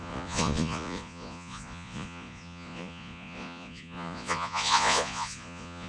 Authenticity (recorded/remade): remade